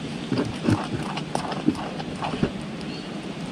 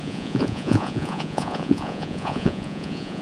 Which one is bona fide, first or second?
first